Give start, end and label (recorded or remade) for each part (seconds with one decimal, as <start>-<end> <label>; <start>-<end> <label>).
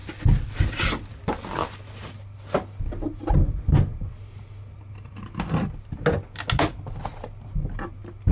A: 0.0-8.3 recorded